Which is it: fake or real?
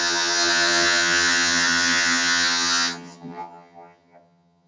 fake